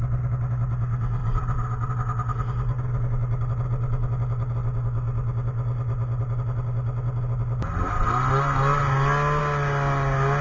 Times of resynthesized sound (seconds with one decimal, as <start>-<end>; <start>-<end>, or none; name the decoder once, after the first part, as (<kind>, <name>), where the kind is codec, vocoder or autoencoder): 1.2-1.9 (vocoder, BigVGAN v2)